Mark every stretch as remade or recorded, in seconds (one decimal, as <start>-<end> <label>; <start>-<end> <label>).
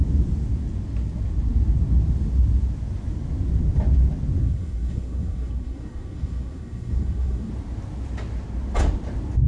0.0-4.4 recorded; 4.4-7.5 remade; 7.5-9.5 recorded